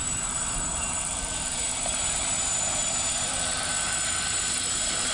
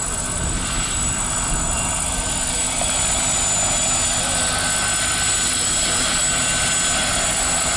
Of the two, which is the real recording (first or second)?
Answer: second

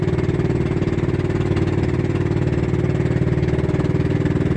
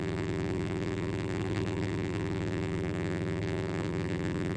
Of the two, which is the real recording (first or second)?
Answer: first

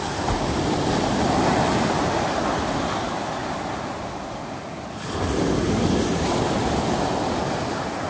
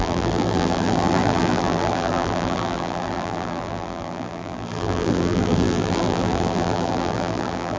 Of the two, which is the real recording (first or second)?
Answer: first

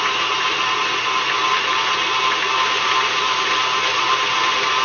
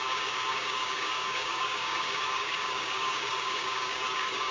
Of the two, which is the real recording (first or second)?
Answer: first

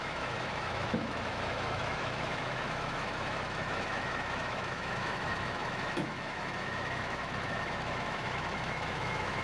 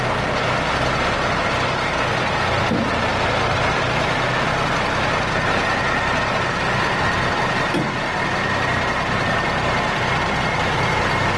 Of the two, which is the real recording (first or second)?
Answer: second